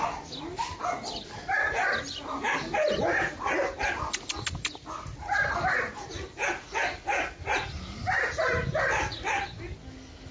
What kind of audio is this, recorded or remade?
recorded